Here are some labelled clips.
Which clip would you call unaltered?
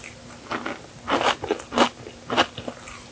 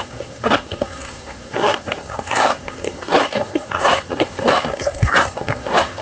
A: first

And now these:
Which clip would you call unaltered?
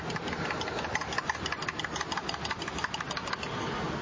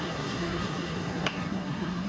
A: first